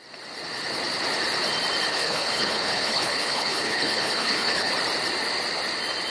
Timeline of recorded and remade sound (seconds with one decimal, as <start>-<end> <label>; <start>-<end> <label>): 0.0-1.9 recorded; 1.9-4.7 remade; 4.7-6.1 recorded

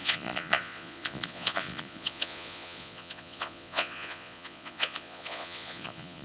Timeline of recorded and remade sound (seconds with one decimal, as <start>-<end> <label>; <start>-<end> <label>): 0.0-6.2 remade